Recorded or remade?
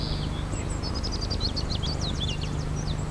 recorded